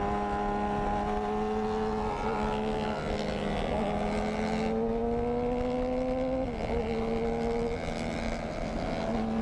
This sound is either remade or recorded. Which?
recorded